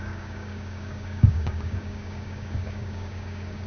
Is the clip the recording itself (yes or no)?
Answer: no